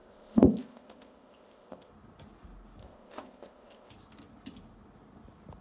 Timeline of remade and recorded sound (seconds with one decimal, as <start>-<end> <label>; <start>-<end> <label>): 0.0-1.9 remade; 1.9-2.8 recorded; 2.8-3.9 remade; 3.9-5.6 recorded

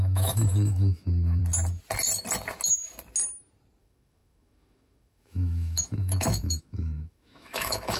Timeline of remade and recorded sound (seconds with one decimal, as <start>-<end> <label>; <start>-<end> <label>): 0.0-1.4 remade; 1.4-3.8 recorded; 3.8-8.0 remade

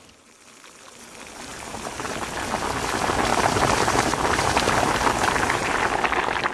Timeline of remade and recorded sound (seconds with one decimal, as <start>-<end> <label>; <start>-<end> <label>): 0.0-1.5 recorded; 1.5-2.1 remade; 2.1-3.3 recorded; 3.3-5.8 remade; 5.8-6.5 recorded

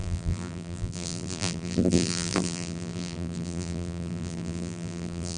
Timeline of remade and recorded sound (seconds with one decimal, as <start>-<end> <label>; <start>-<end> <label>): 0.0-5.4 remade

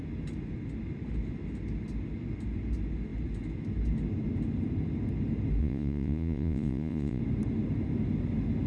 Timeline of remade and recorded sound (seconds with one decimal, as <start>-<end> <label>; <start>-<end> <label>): 0.0-5.6 recorded; 5.6-7.2 remade; 7.2-8.7 recorded

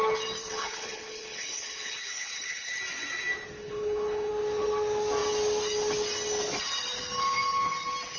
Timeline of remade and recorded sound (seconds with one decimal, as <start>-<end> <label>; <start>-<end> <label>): 0.0-0.4 recorded; 0.4-2.8 remade; 2.8-3.6 recorded; 3.6-4.3 remade; 4.3-8.2 recorded